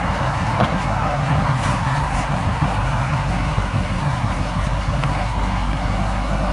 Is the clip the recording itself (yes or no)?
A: no